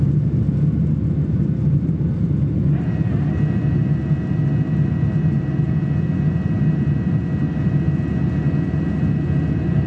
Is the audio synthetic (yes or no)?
no